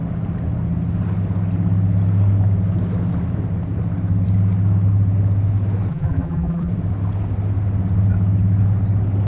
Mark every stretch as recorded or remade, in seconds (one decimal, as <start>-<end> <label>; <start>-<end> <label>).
0.0-5.9 recorded; 5.9-6.7 remade; 6.7-9.3 recorded